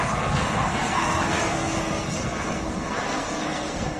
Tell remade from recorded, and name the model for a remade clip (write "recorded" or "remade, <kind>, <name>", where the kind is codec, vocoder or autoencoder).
remade, codec, SNAC